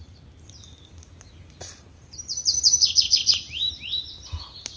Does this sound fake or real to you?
real